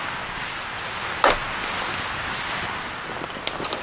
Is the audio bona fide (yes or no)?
yes